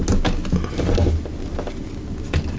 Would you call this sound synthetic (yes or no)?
no